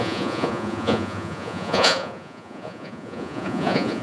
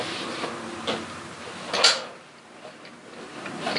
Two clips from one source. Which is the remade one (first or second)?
first